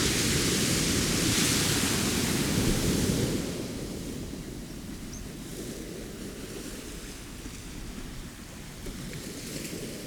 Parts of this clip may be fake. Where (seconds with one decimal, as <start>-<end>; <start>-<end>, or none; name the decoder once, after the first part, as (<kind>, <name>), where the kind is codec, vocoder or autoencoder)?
none